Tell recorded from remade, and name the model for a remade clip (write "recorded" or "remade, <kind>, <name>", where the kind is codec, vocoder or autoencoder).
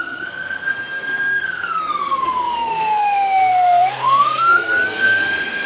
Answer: remade, codec, SNAC